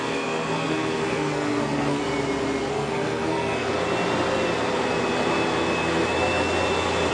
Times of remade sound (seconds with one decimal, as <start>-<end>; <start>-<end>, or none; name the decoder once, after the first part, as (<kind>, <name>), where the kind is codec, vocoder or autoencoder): 0.0-2.0 (codec, SNAC); 2.7-3.7